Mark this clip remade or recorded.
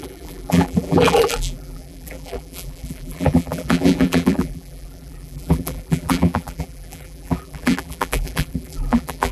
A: remade